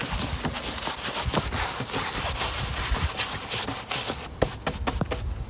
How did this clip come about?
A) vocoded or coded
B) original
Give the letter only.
B